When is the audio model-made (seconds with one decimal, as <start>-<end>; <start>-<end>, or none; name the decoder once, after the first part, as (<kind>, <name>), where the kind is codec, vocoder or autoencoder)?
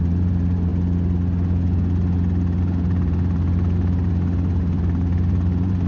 0.0-0.7 (vocoder, BigVGAN v2); 2.6-4.1; 4.6-5.9